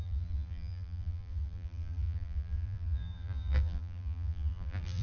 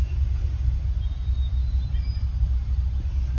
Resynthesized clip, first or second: first